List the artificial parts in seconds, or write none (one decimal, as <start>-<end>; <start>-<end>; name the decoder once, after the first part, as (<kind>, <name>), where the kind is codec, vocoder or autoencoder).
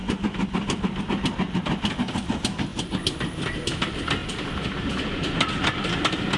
none